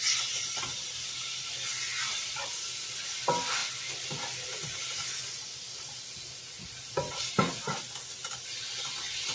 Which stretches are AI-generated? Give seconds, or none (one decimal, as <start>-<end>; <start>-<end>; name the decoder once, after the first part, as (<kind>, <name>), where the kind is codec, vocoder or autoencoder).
1.9-2.5 (vocoder, BigVGAN v2); 3.6-7.3